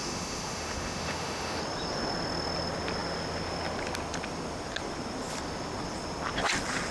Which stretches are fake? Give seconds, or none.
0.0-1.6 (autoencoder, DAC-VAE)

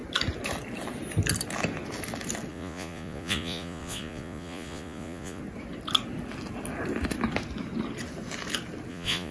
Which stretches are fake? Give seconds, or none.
2.5-5.4 (vocoder, Vocos); 8.9-9.3

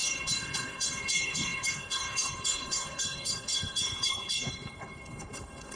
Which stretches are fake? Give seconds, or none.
0.0-5.8 (codec, HILCodec)